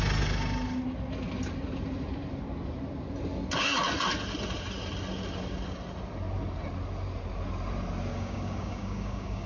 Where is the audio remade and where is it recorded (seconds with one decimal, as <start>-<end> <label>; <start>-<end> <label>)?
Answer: 0.0-8.1 recorded; 8.1-9.5 remade